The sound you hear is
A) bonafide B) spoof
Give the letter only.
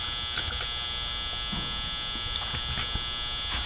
A